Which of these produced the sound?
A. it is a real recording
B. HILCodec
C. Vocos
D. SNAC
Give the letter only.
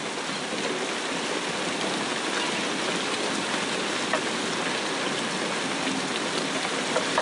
A